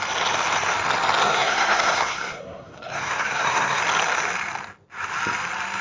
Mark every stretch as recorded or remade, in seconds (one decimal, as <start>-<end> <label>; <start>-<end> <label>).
0.0-1.2 recorded; 1.2-3.8 remade; 3.8-5.8 recorded

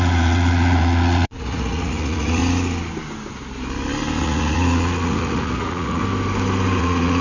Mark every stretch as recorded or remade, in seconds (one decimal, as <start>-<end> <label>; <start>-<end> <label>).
0.0-2.4 remade; 2.4-4.2 recorded; 4.2-6.0 remade; 6.0-6.8 recorded; 6.8-7.2 remade

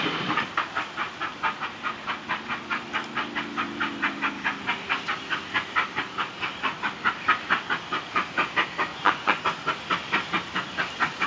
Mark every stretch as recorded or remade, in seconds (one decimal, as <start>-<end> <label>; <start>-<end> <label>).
0.0-8.9 recorded; 8.9-9.4 remade; 9.4-11.3 recorded

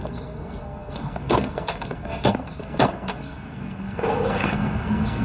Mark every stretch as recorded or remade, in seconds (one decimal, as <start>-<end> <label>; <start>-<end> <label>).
0.0-5.2 remade

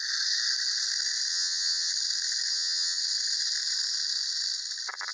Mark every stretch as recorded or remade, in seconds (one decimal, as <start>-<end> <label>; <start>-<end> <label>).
0.0-1.3 recorded; 1.3-1.9 remade; 1.9-2.5 recorded; 2.5-3.0 remade; 3.0-5.1 recorded

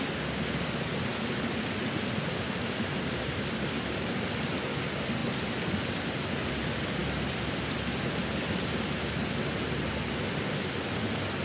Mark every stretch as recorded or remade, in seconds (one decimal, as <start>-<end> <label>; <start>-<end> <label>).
0.0-11.4 recorded

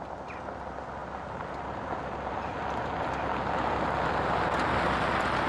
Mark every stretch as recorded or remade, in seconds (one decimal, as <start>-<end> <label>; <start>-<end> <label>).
0.0-5.5 recorded